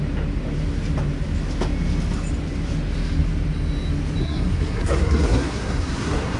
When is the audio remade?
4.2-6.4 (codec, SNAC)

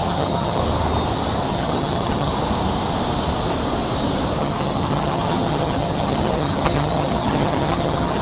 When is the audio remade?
0.0-0.6 (vocoder, HiFi-GAN); 1.5-2.3; 4.4-8.2

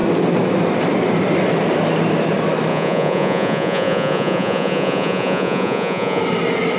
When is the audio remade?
2.7-6.2 (vocoder, Vocos)

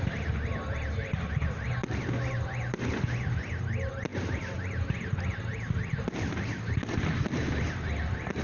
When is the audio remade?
none

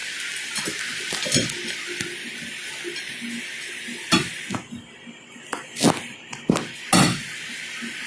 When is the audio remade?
none

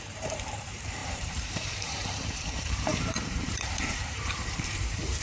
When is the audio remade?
0.0-5.2 (vocoder, BigVGAN v2)

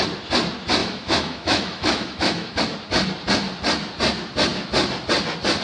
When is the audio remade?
0.8-2.6 (autoencoder, DAC-VAE)